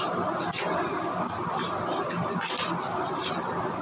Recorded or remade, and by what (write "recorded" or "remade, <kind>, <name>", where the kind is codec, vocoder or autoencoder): remade, vocoder, BigVGAN v2